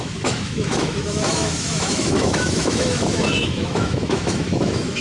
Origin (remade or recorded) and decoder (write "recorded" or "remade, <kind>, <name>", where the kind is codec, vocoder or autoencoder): remade, autoencoder, DAC-VAE